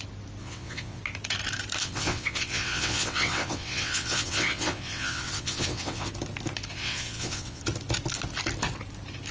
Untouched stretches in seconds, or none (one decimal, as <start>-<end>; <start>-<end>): 0.0-0.4; 1.0-1.8; 6.1-6.7; 7.6-9.3